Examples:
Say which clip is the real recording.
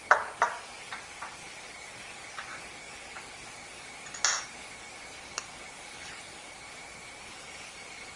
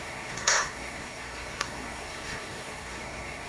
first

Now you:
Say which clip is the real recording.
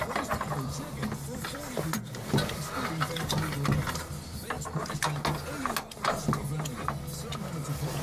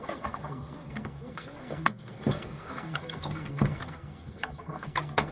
first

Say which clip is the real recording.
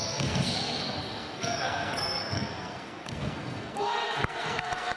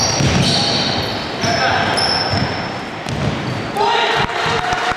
second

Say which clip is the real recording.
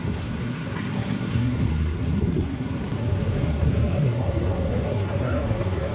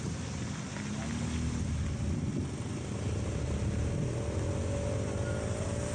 second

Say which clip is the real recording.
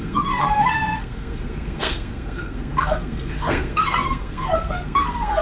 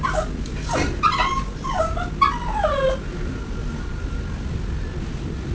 second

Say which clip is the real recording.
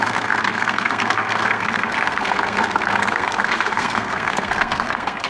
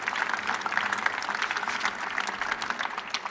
second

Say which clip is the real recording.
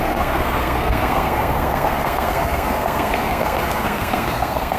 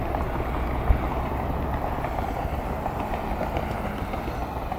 second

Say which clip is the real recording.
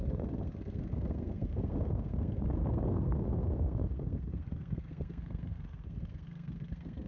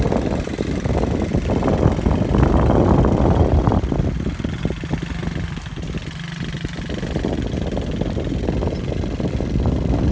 second